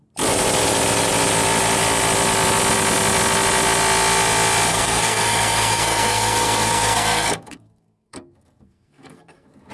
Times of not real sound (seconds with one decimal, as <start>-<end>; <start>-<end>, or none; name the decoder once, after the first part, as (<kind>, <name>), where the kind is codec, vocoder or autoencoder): 4.7-9.7 (codec, SNAC)